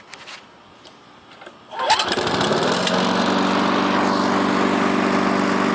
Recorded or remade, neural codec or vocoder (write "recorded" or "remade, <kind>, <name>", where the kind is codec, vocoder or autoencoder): recorded